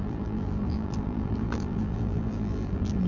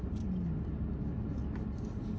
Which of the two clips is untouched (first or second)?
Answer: second